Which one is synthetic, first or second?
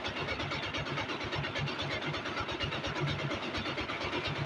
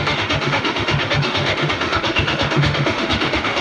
second